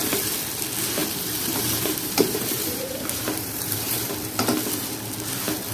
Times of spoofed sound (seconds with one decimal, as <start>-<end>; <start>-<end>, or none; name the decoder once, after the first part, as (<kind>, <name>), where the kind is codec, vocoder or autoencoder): 1.0-4.1 (vocoder, BigVGAN v2)